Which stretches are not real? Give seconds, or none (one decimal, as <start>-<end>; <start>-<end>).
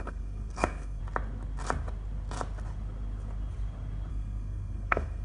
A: 0.0-1.0; 4.1-5.2